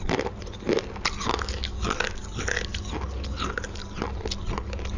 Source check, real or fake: real